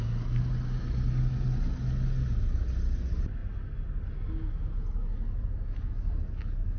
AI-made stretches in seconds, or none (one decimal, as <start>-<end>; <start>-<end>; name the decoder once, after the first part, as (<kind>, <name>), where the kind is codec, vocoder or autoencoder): none